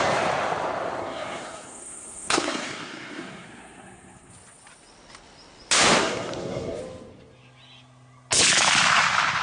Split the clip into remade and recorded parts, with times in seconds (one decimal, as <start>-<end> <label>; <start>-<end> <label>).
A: 0.0-1.0 recorded; 1.0-4.3 remade; 4.3-6.0 recorded; 6.0-6.8 remade; 6.8-9.4 recorded